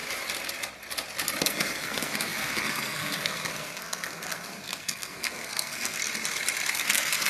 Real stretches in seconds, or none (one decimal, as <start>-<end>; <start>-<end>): 0.0-1.4; 6.0-6.7